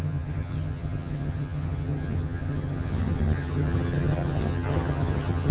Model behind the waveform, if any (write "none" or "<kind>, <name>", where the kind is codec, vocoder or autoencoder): vocoder, HiFi-GAN